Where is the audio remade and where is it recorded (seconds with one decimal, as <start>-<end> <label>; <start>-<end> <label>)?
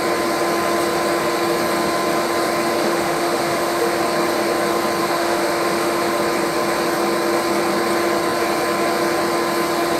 0.0-2.8 recorded; 2.8-4.0 remade; 4.0-5.0 recorded; 5.0-6.2 remade; 6.2-10.0 recorded